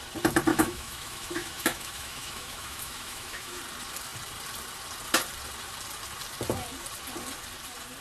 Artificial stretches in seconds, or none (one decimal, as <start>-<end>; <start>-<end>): 0.5-3.6